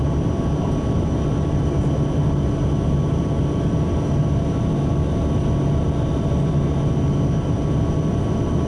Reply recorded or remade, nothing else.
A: recorded